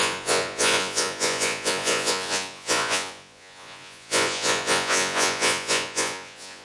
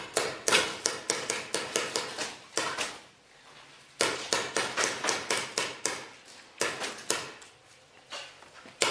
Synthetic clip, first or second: first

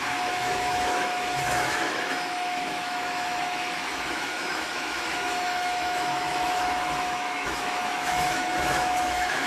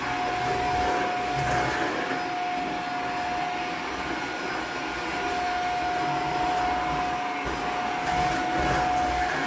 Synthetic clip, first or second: first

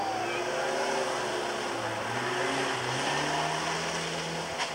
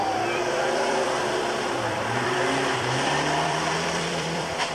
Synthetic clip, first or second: second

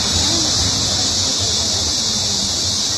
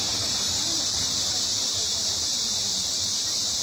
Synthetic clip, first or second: second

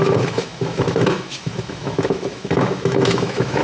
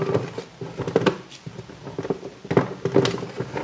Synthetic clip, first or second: first